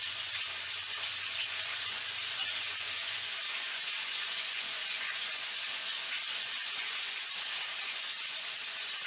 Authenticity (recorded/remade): remade